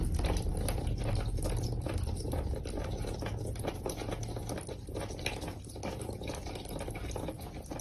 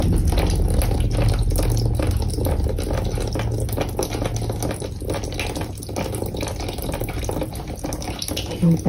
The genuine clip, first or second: second